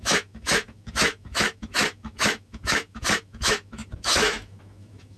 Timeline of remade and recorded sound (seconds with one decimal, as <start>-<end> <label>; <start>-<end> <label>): 0.0-5.2 remade